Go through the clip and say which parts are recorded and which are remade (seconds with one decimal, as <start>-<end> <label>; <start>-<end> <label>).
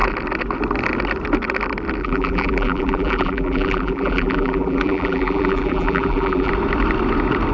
0.0-2.0 recorded; 2.0-6.5 remade; 6.5-7.5 recorded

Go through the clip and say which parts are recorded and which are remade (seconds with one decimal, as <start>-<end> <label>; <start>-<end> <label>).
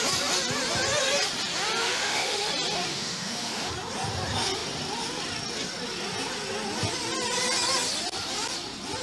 0.0-1.8 recorded; 1.8-2.5 remade; 2.5-2.9 recorded; 2.9-3.7 remade; 3.7-9.0 recorded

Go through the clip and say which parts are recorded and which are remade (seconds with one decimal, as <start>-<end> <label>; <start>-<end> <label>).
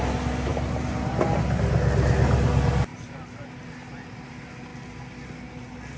0.0-2.9 recorded; 2.9-3.5 remade; 3.5-6.0 recorded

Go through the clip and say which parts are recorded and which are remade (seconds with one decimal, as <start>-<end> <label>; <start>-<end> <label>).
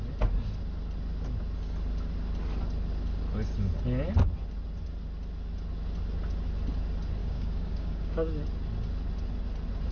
0.0-7.2 recorded; 7.2-8.3 remade; 8.3-9.9 recorded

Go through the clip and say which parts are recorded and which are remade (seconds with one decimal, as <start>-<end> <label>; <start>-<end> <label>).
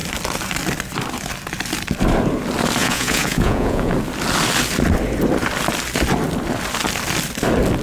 0.0-2.8 recorded; 2.8-3.9 remade; 3.9-7.8 recorded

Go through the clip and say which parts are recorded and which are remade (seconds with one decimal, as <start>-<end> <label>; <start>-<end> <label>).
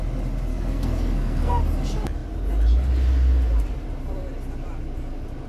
0.0-0.5 recorded; 0.5-1.6 remade; 1.6-5.5 recorded